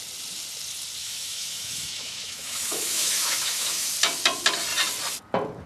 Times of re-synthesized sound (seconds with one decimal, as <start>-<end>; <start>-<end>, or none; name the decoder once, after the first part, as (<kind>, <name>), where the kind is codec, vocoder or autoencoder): 1.0-3.9 (autoencoder, DAC-VAE)